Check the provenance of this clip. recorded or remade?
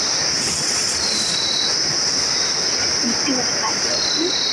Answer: recorded